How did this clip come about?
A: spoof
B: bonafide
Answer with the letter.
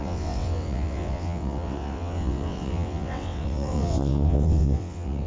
A